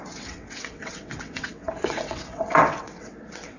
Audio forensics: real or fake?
fake